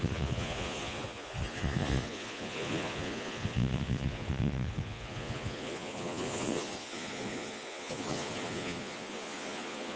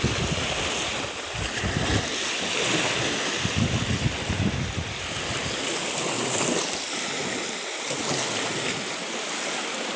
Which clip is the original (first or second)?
second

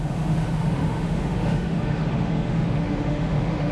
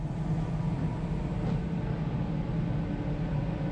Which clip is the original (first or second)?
second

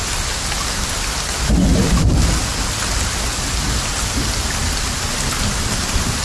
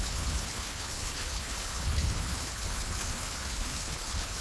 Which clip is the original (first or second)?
first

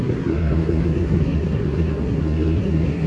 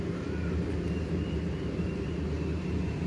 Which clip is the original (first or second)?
second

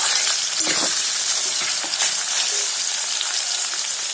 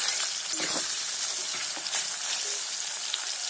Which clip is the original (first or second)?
second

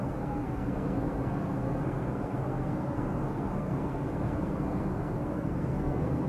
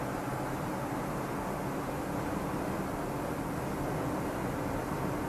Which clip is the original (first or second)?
second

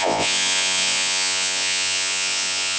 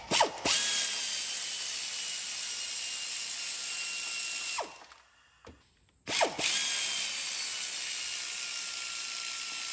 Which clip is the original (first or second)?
second